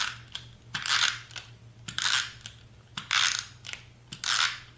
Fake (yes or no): no